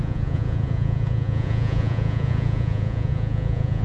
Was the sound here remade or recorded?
remade